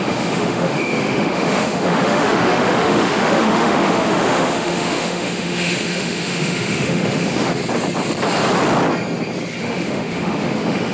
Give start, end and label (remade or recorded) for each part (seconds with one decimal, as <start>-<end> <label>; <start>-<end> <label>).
0.0-7.6 remade; 7.6-9.6 recorded; 9.6-10.9 remade